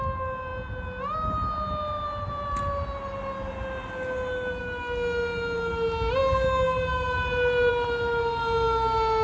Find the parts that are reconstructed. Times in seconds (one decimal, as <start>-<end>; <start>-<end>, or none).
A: none